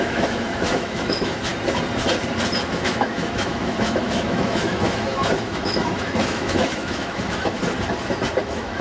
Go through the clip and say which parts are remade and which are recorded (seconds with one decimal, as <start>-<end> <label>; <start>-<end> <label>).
0.0-1.5 remade; 1.5-2.7 recorded; 2.7-7.6 remade; 7.6-8.4 recorded; 8.4-8.8 remade